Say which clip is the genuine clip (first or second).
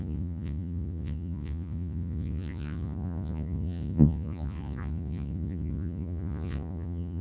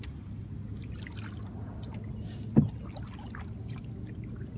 second